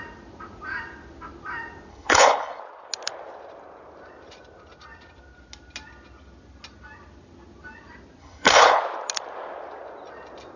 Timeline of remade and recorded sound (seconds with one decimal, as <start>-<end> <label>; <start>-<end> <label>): 0.0-1.9 recorded; 1.9-2.6 remade; 2.6-8.2 recorded; 8.2-8.8 remade; 8.8-10.6 recorded